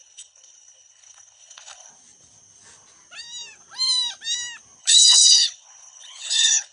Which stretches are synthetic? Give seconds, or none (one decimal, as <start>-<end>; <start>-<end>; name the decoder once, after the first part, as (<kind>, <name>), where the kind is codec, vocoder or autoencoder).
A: 0.0-1.9 (codec, HILCodec); 4.8-6.7